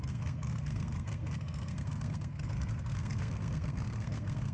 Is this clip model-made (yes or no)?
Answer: yes